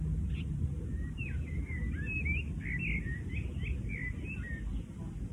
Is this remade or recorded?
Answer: recorded